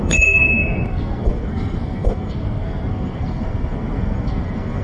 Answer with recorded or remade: remade